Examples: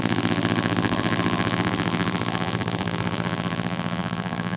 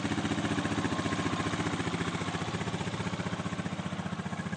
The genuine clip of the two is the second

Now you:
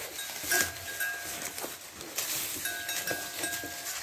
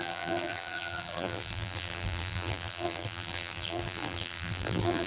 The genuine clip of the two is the first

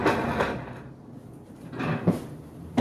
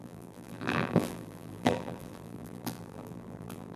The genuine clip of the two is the first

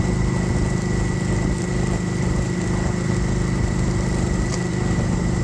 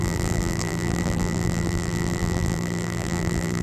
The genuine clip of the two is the first